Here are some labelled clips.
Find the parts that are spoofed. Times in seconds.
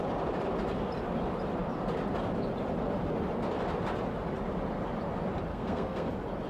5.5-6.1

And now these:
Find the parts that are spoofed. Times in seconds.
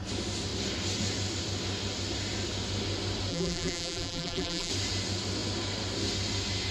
3.3-4.7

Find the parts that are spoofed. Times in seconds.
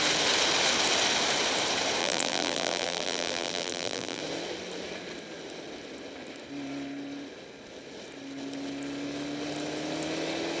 2.0-4.2